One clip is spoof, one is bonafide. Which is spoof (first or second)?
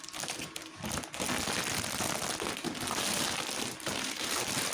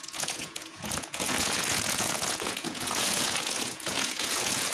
second